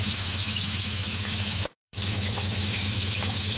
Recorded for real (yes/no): no